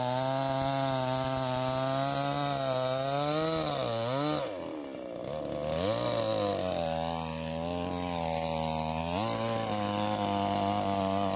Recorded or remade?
recorded